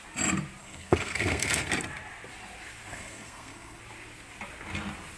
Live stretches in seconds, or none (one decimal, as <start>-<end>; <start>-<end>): 0.0-0.6; 1.7-2.9; 3.8-5.2